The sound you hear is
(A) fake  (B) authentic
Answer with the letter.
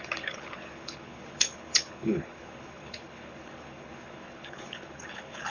A